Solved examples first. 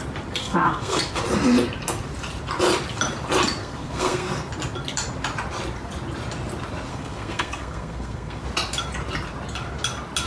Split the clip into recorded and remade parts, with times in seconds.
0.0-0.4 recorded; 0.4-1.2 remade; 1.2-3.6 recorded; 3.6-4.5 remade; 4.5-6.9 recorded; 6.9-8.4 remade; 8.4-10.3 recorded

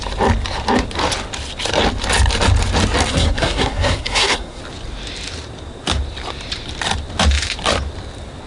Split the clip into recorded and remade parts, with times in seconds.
0.0-3.1 recorded; 3.1-4.6 remade; 4.6-8.5 recorded

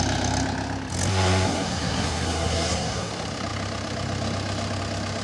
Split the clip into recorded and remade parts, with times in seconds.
0.0-1.1 recorded; 1.1-3.1 remade; 3.1-5.2 recorded